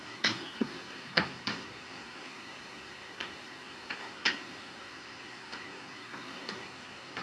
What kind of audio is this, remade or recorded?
remade